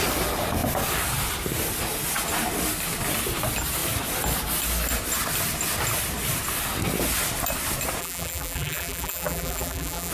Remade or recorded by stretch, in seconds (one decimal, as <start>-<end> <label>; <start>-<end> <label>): 0.0-8.0 recorded; 8.0-10.1 remade